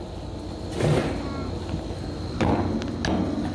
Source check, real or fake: real